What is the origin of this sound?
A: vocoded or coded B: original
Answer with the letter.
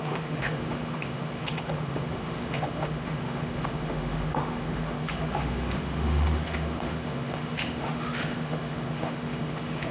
A